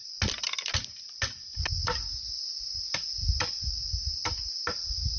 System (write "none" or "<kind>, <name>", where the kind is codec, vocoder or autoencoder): none